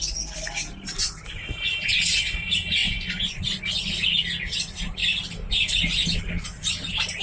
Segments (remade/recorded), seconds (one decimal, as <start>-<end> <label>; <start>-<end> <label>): 0.0-2.8 recorded; 2.8-3.6 remade; 3.6-7.2 recorded